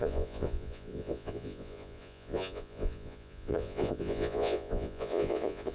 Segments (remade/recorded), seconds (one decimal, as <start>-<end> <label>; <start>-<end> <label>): 0.0-5.7 remade